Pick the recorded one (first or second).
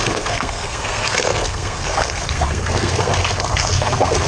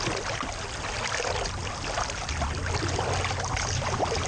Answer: second